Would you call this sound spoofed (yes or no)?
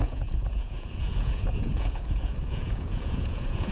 yes